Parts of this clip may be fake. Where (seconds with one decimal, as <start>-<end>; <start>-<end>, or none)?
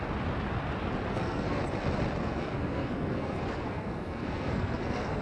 1.1-1.6; 2.2-5.2